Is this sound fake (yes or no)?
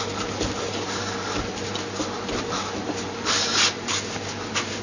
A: no